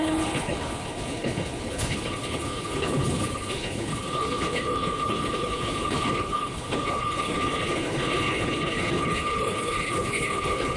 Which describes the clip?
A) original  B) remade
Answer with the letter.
B